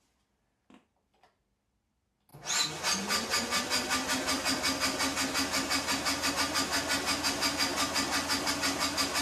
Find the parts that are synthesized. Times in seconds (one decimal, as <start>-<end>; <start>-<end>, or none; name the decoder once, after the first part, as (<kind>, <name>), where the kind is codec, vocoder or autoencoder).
none